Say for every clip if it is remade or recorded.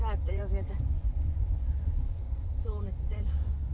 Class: remade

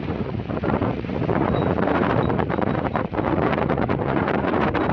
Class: remade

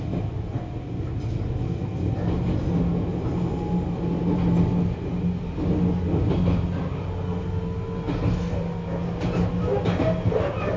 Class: recorded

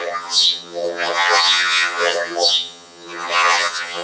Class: remade